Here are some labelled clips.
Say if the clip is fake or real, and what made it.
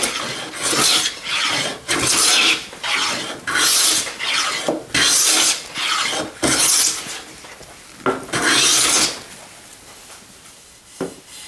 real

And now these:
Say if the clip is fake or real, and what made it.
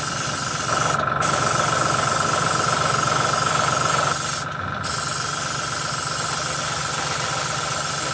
real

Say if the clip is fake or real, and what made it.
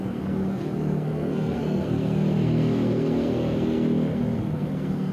fake, codec, SNAC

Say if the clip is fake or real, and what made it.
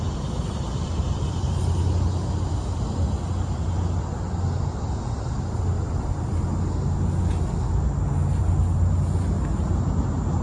real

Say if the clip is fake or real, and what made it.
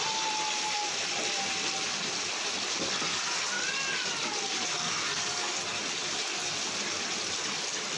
real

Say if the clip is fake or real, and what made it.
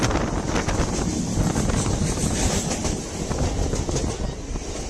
real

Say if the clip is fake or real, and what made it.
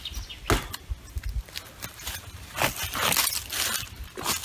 real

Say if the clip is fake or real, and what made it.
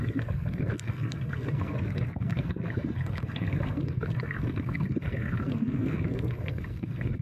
fake, codec, SNAC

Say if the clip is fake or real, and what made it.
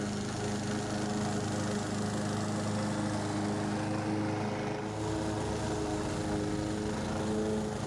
real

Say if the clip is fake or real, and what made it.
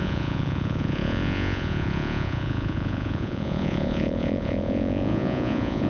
fake, vocoder, Vocos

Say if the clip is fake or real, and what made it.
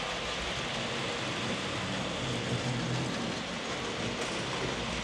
real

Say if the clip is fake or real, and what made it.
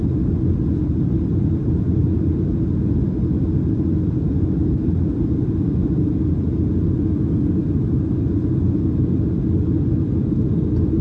real